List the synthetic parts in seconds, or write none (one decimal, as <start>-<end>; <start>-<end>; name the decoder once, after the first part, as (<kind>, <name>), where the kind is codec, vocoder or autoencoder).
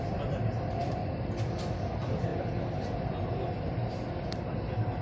none